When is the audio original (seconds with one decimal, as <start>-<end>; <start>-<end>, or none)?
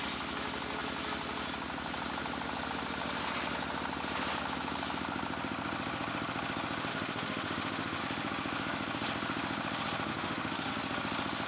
0.0-6.9; 8.0-10.1; 10.7-11.5